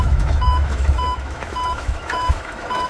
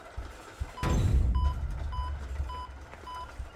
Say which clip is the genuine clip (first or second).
second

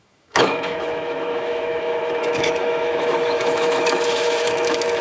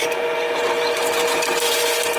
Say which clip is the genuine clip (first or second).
second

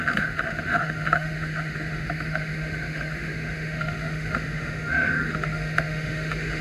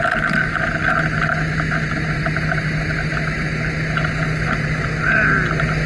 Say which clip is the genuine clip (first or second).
second